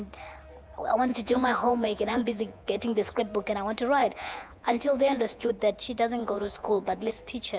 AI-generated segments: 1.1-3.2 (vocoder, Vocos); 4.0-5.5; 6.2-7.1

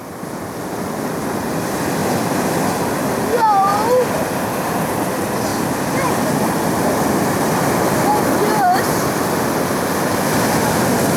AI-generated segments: 3.7-4.2 (vocoder, BigVGAN v2); 5.5-10.7

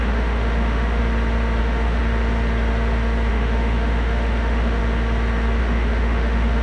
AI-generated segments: 0.0-1.0 (autoencoder, DAC-VAE); 1.6-2.0; 3.3-4.8; 5.6-6.6

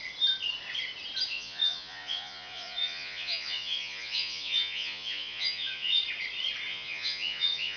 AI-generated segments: 1.3-6.0 (vocoder, Vocos); 6.7-7.8

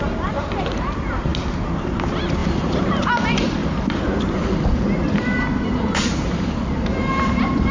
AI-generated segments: 0.0-1.3 (vocoder, BigVGAN v2); 1.8-3.6; 5.1-7.7

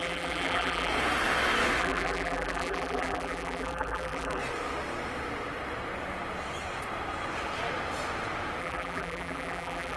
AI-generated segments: 0.0-0.9 (vocoder, BigVGAN v2); 1.8-4.4; 8.6-10.0

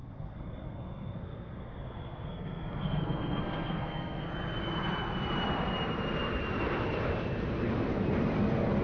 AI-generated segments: 0.0-4.3 (codec, SNAC)